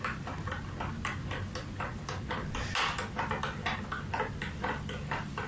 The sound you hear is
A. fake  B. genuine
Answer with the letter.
B